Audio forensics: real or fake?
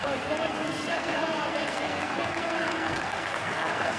fake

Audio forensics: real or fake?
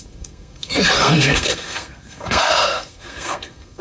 fake